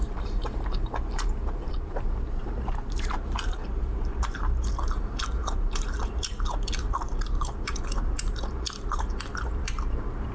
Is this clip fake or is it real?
fake